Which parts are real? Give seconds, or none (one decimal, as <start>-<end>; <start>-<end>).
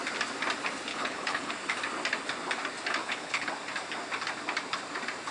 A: 0.0-0.9; 1.5-3.0; 3.5-5.3